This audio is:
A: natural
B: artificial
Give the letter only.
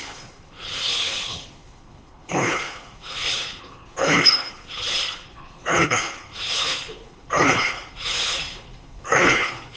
B